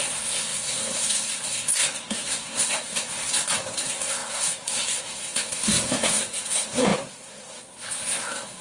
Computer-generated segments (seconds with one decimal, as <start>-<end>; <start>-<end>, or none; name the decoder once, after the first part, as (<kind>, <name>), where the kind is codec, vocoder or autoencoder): 0.0-8.6 (codec, SNAC)